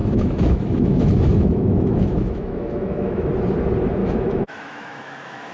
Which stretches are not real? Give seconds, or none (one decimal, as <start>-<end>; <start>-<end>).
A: 0.0-3.3; 4.0-5.5